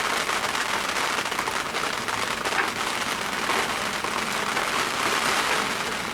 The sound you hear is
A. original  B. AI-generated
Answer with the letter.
A